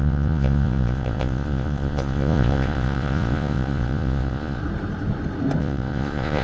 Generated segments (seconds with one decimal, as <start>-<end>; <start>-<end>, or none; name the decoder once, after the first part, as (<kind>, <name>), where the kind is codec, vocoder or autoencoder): 0.0-4.6 (vocoder, Vocos); 5.6-6.4